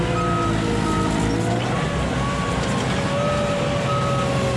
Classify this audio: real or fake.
real